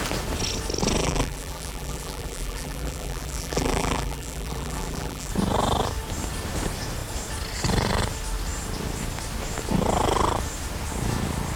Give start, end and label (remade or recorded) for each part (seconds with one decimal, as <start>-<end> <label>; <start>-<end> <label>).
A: 0.0-1.0 recorded; 1.0-5.3 remade; 5.3-11.6 recorded